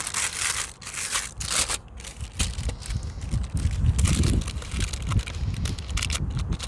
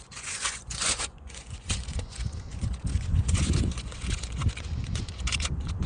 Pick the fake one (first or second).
second